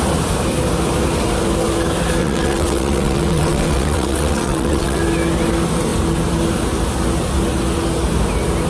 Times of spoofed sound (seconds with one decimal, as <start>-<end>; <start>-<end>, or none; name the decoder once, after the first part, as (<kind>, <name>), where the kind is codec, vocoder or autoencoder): 2.2-5.0 (vocoder, WaveNeXt)